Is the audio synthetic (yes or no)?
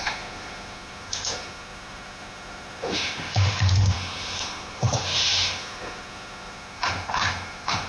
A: yes